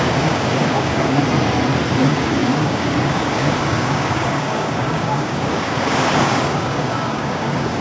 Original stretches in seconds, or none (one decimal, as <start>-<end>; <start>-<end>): 1.2-2.0